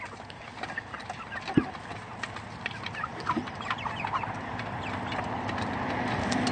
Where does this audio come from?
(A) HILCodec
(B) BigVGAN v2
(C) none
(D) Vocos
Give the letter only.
C